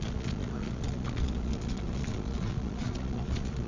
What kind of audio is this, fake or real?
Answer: fake